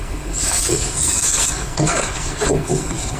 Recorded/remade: remade